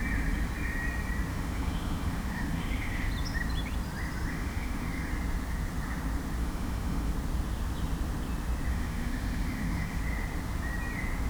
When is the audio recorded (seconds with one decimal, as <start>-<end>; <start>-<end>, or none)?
0.0-1.3; 3.1-4.3; 5.1-6.4; 7.1-8.7; 10.0-11.3